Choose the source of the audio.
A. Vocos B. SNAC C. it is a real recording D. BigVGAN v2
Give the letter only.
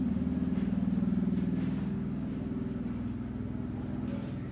C